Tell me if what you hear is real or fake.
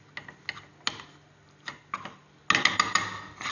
real